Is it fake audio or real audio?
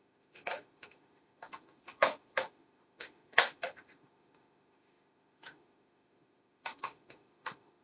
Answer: fake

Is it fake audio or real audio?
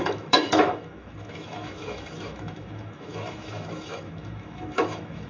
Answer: fake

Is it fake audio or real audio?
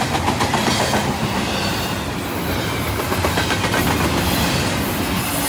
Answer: real